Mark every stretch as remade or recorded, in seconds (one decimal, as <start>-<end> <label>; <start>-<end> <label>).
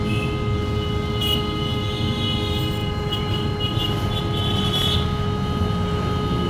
0.0-2.8 recorded; 2.8-4.2 remade; 4.2-6.5 recorded